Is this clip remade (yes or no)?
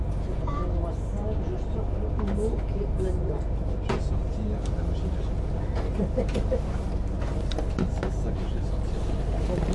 no